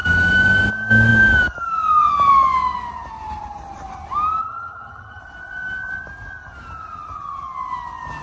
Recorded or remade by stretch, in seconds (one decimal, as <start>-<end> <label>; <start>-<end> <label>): 0.0-4.4 recorded; 4.4-5.2 remade; 5.2-8.2 recorded